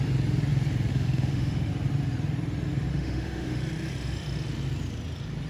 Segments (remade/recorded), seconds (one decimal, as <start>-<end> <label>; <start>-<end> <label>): 0.0-0.9 recorded; 0.9-1.7 remade; 1.7-2.9 recorded; 2.9-3.6 remade; 3.6-5.5 recorded